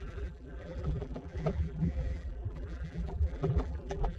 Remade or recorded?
remade